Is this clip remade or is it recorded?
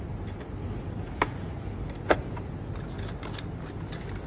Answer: recorded